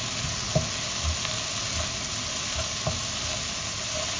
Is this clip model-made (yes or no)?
no